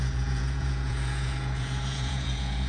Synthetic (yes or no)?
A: yes